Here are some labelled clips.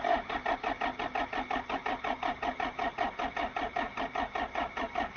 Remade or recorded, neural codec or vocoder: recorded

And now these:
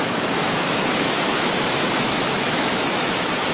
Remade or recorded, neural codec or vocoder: remade, autoencoder, DAC-VAE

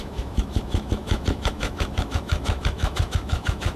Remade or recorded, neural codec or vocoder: remade, autoencoder, DAC-VAE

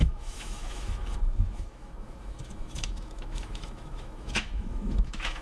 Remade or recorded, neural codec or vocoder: remade, autoencoder, DAC-VAE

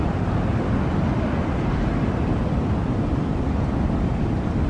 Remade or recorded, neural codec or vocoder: recorded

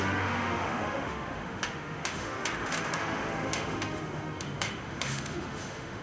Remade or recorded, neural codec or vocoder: remade, autoencoder, DAC-VAE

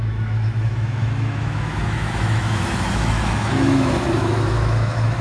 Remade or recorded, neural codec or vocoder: remade, autoencoder, DAC-VAE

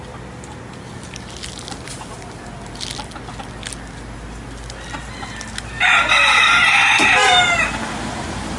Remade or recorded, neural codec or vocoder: recorded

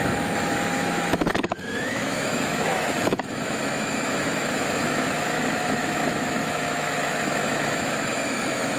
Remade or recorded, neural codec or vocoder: remade, autoencoder, DAC-VAE